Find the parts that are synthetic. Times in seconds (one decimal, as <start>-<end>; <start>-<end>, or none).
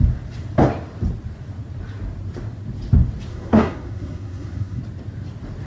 3.3-4.8